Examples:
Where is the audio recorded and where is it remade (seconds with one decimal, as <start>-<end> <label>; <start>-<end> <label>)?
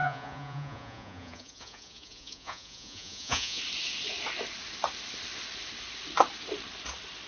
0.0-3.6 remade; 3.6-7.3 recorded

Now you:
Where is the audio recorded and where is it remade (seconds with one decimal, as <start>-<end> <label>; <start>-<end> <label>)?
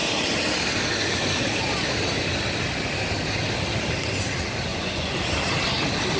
0.0-4.7 recorded; 4.7-5.2 remade; 5.2-6.2 recorded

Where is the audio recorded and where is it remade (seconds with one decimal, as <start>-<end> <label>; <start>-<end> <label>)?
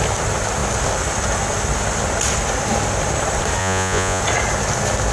0.0-3.6 recorded; 3.6-4.2 remade; 4.2-5.1 recorded